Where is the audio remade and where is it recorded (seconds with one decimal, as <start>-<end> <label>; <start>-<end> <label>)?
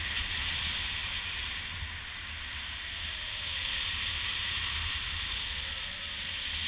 0.0-6.7 recorded